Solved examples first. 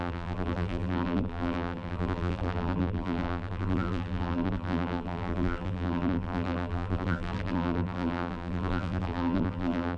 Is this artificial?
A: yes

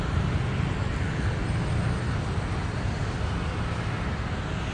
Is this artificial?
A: no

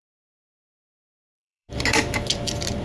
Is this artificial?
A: yes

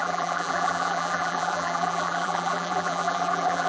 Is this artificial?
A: yes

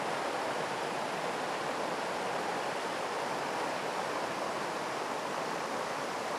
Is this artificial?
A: no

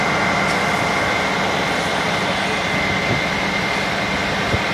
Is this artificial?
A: no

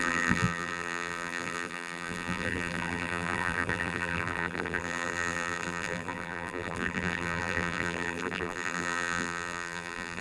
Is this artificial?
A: yes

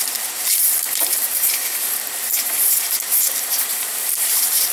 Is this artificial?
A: yes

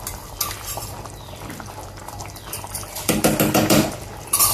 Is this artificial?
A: yes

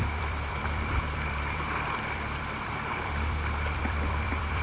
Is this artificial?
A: yes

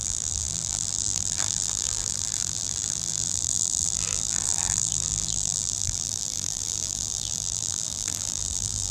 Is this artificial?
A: yes